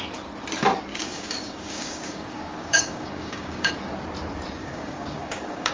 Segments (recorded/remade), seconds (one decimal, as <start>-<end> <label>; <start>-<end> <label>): 0.0-0.9 recorded; 0.9-3.7 remade; 3.7-4.6 recorded; 4.6-5.7 remade